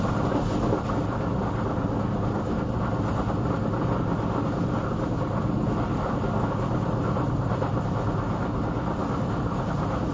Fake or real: real